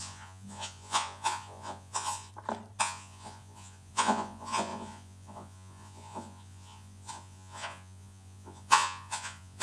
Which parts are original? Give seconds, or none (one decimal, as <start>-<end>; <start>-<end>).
2.3-2.8